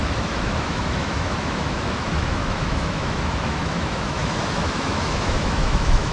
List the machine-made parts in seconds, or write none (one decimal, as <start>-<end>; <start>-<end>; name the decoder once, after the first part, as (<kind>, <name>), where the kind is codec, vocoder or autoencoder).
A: 0.0-6.1 (autoencoder, DAC-VAE)